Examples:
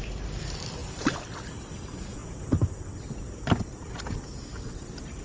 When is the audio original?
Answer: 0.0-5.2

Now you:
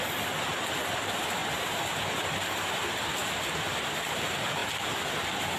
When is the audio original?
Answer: 0.0-5.6

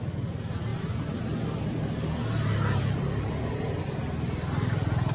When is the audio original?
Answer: 0.0-5.1

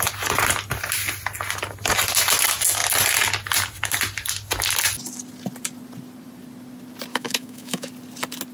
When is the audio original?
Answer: 0.0-7.1; 7.9-8.5